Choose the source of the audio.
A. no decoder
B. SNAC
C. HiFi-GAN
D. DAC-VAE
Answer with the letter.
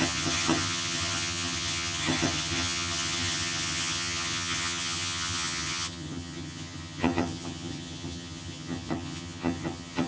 C